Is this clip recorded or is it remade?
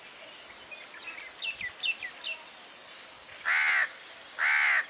recorded